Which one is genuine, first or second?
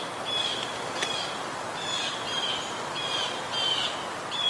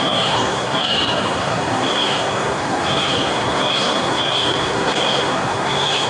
first